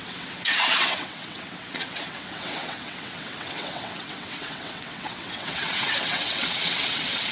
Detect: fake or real fake